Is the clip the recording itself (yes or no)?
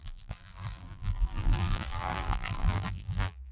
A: no